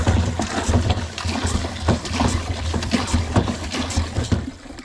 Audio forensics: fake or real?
real